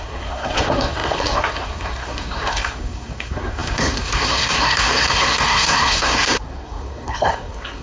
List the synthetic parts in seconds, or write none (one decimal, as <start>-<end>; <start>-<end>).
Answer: 0.0-7.8